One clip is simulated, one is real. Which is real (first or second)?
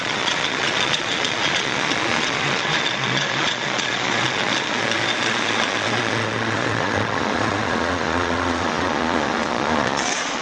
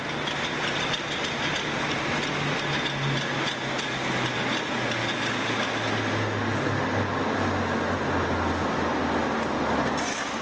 second